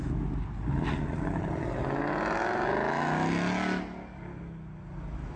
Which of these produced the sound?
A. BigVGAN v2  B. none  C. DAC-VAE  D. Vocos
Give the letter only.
B